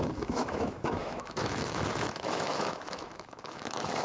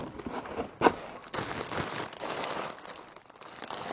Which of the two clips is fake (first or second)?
first